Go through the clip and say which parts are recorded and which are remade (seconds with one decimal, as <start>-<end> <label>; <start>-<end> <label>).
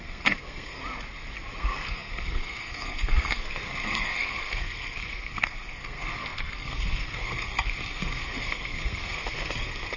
0.0-0.8 remade; 0.8-1.6 recorded; 1.6-10.0 remade